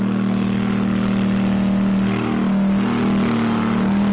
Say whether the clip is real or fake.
real